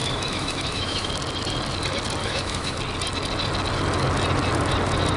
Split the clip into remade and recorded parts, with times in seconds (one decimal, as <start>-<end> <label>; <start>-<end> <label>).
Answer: 0.0-1.1 remade; 1.1-2.2 recorded; 2.2-2.8 remade; 2.8-5.2 recorded